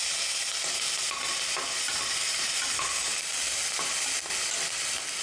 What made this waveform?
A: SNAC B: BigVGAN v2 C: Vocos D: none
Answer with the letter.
D